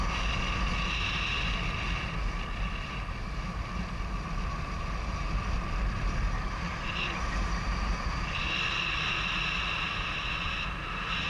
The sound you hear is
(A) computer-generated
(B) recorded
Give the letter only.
B